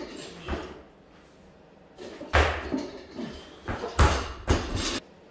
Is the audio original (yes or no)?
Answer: yes